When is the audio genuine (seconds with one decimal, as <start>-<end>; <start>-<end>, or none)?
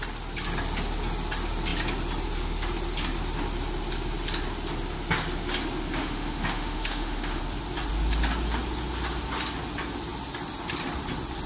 0.0-6.0; 7.4-11.5